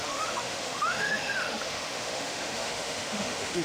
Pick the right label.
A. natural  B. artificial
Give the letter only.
B